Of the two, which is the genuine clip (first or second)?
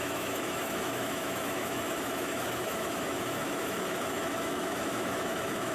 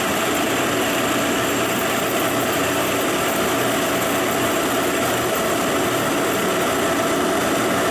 second